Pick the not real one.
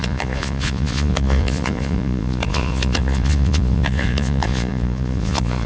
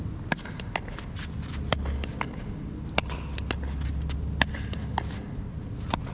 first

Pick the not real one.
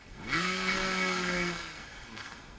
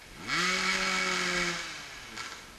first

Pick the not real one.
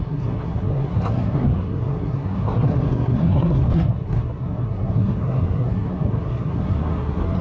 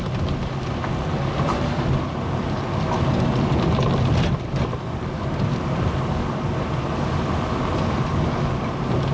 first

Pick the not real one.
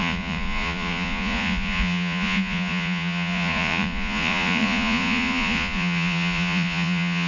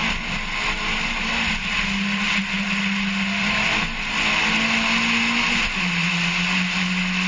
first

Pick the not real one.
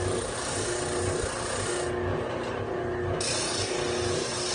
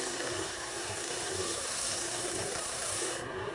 second